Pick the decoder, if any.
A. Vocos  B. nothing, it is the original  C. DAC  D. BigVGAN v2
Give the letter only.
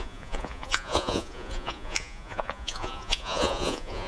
A